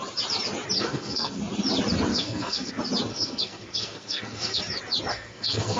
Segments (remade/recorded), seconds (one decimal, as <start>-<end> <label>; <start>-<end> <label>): 0.0-0.8 recorded; 0.8-1.4 remade; 1.4-2.1 recorded; 2.1-2.7 remade; 2.7-3.1 recorded; 3.1-4.6 remade; 4.6-5.1 recorded; 5.1-5.8 remade